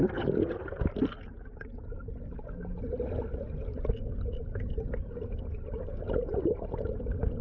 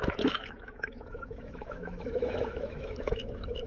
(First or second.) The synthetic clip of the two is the second